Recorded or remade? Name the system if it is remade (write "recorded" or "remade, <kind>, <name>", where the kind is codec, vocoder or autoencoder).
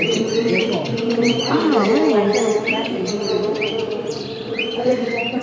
remade, vocoder, BigVGAN v2